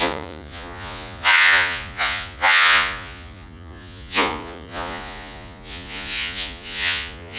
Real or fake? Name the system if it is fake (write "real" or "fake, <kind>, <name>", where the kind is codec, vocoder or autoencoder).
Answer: fake, vocoder, Vocos